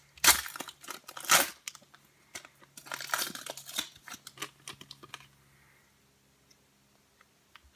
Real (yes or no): yes